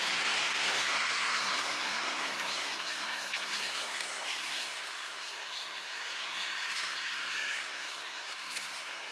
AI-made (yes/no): yes